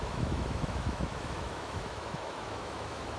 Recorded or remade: remade